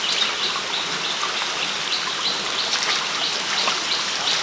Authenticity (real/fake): real